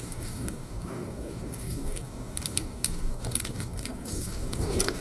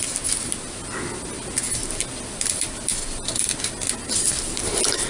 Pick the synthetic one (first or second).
first